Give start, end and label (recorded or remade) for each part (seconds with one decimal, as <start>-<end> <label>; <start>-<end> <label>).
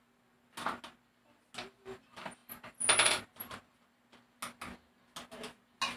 0.0-6.0 recorded